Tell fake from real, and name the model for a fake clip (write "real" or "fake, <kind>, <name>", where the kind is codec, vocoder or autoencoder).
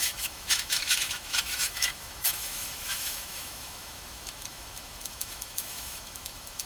fake, autoencoder, DAC-VAE